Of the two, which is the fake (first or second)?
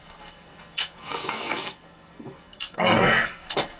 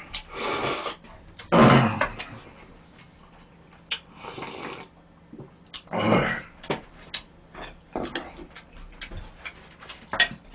first